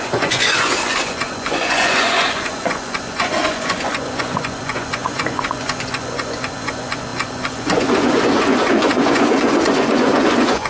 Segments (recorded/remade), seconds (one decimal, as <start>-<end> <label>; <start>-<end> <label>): 0.0-10.7 remade